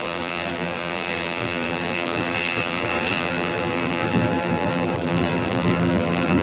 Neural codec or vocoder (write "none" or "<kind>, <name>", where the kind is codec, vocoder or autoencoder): vocoder, BigVGAN v2